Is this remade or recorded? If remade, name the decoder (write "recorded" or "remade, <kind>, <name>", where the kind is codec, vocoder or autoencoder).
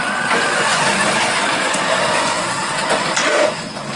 remade, vocoder, Vocos